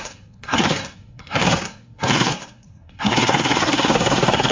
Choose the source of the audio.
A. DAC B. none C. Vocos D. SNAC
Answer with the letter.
D